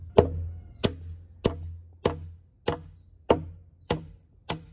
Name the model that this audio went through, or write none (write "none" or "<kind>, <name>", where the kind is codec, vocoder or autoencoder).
none